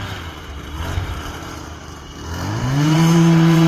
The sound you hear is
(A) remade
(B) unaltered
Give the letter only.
A